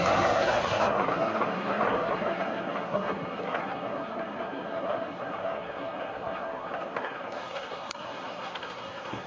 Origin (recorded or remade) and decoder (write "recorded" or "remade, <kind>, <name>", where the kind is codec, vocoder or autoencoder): remade, codec, SNAC